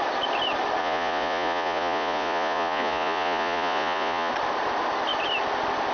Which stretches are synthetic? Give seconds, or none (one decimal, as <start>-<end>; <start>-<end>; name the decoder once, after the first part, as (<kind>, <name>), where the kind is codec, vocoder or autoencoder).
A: 0.8-4.3 (vocoder, Vocos)